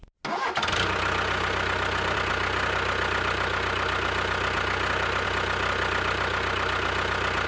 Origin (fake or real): real